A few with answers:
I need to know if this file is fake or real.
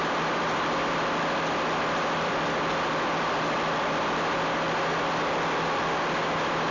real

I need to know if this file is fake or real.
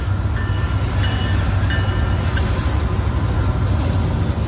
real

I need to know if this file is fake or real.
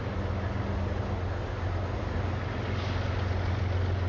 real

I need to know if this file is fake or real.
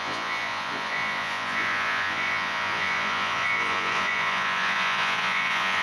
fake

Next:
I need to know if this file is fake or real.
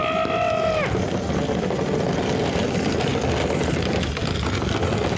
real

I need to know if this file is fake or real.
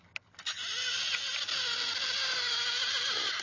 real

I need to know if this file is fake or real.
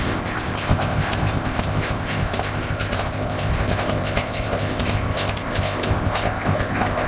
fake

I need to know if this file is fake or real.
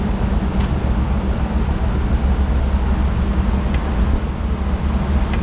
real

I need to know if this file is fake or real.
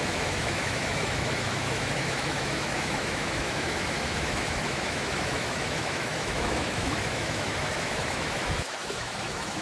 fake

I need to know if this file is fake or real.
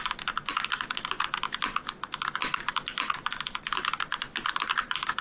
real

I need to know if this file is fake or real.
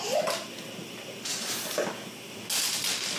real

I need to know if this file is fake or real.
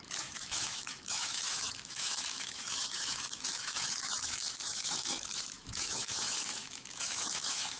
fake